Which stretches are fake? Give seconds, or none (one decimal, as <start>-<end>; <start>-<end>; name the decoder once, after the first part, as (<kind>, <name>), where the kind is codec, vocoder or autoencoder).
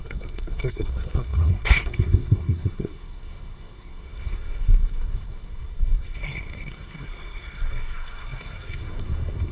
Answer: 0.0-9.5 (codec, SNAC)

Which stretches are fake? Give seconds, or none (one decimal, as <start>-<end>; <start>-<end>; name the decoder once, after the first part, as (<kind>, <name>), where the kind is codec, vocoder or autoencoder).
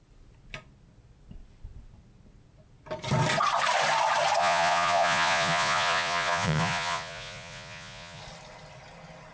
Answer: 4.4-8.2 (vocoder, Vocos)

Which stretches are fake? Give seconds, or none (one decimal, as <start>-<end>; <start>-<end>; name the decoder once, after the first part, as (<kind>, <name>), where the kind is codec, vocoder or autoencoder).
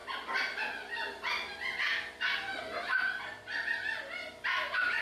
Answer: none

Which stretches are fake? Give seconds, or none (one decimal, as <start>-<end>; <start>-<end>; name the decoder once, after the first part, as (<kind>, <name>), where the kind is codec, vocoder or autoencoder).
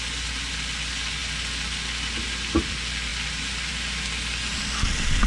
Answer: none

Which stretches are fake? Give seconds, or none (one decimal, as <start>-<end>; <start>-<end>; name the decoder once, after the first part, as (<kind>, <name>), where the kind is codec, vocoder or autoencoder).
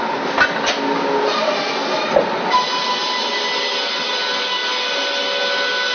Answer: none